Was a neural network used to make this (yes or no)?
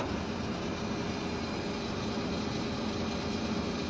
no